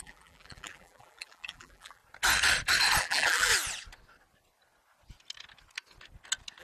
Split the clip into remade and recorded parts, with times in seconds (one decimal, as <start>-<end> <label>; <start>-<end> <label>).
0.0-2.0 remade; 2.0-3.0 recorded; 3.0-3.5 remade; 3.5-6.6 recorded